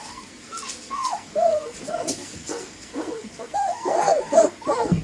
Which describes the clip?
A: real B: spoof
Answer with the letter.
B